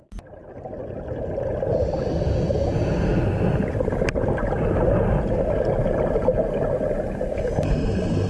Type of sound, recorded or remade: recorded